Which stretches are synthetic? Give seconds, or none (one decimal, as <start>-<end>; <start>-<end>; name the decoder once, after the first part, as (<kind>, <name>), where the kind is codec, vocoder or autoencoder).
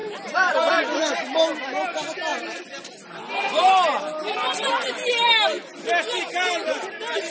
0.0-0.7 (vocoder, BigVGAN v2); 2.3-3.6